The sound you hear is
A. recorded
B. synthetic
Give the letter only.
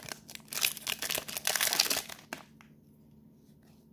A